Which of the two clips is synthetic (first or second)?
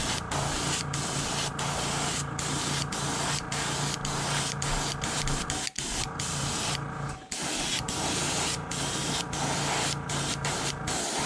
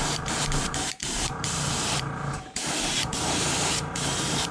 second